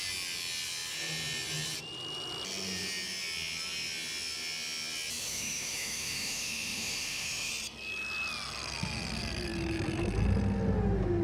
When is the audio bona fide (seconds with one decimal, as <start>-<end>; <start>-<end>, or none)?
0.0-5.2; 7.5-11.2